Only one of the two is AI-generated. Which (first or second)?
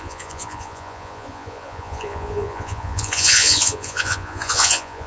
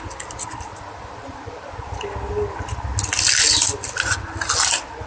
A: first